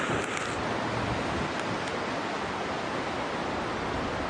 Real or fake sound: real